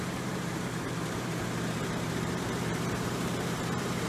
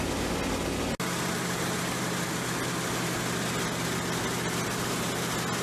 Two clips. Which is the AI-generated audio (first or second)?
first